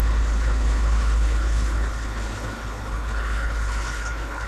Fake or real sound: fake